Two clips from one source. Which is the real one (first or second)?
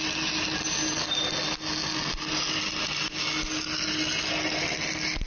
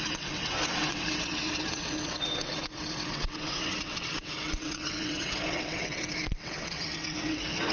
first